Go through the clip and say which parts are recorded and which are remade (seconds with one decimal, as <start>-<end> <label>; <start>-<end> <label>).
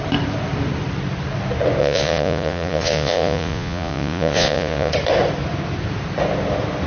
0.0-1.8 recorded; 1.8-4.9 remade; 4.9-6.9 recorded